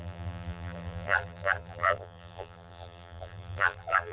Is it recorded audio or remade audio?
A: remade